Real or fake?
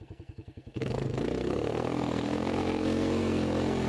fake